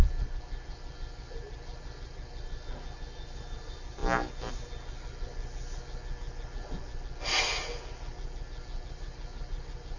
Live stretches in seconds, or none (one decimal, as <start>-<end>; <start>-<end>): 0.0-10.0